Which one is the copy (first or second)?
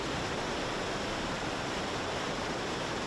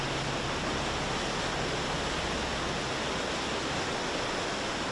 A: first